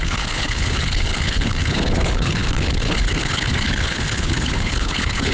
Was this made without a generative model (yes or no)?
no